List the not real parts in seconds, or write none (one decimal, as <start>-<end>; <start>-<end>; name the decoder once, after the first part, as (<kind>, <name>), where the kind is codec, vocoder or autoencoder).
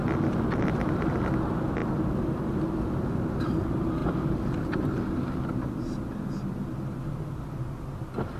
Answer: none